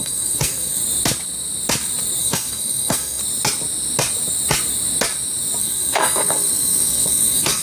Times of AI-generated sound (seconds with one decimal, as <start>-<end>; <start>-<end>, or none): 0.0-0.8; 2.2-3.2; 5.6-7.6